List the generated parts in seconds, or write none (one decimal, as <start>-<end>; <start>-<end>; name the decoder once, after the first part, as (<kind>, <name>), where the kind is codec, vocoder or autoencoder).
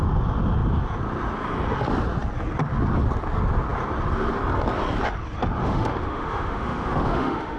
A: 5.6-7.6 (autoencoder, DAC-VAE)